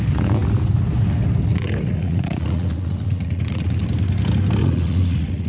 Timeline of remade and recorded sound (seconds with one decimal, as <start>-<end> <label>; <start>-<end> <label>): 0.0-1.5 recorded; 1.5-3.8 remade; 3.8-4.6 recorded; 4.6-5.5 remade